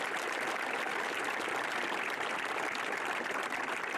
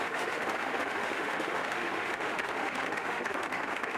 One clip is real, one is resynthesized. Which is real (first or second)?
first